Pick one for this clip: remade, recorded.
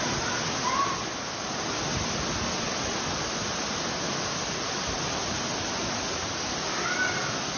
recorded